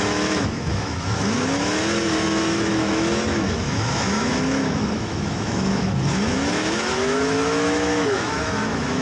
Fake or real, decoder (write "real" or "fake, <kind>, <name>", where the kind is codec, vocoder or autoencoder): fake, autoencoder, DAC-VAE